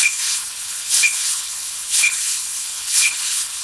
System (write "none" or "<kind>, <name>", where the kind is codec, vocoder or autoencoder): codec, HILCodec